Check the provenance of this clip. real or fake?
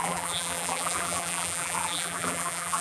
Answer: fake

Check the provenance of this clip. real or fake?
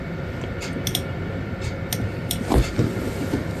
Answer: real